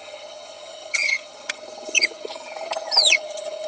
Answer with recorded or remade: remade